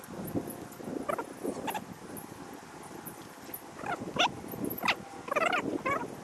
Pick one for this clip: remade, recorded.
recorded